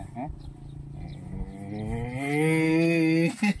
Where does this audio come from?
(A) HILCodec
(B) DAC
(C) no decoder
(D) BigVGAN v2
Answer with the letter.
C